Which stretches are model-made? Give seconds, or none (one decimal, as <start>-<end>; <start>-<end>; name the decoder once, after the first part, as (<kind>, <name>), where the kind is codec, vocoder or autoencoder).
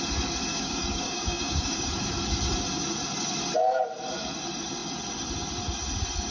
0.5-1.9 (codec, DAC)